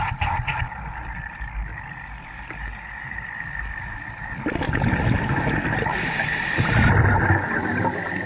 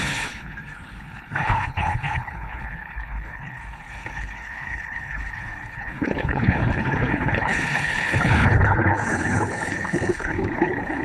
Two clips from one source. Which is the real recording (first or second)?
first